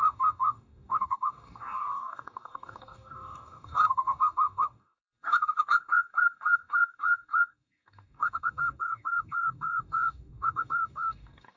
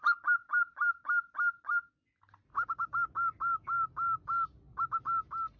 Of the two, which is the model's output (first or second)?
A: first